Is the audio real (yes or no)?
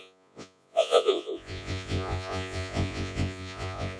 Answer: no